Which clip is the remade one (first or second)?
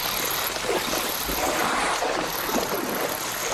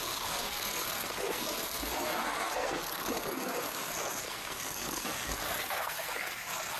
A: second